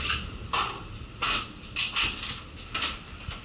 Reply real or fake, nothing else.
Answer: real